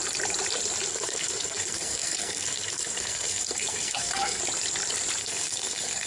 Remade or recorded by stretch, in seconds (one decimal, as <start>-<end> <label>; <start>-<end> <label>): 0.0-0.9 recorded; 0.9-4.4 remade; 4.4-5.2 recorded; 5.2-6.1 remade